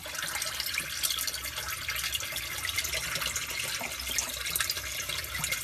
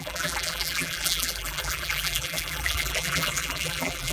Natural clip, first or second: first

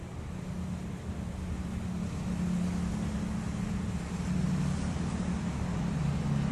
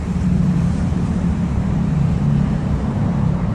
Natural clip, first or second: first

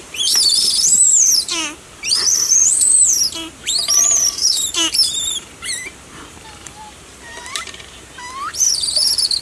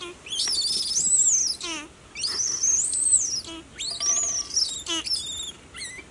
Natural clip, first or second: second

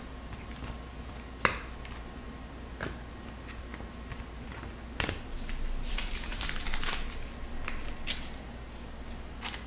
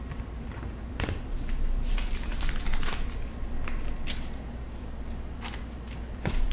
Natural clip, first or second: first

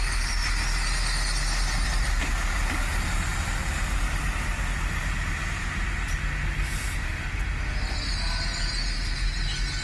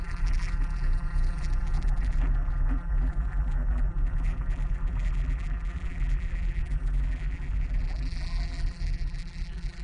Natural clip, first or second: first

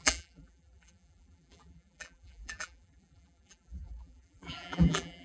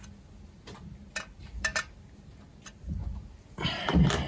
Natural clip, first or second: second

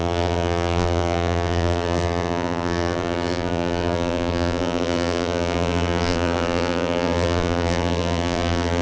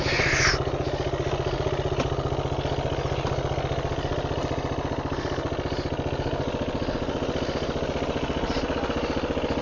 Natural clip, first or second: second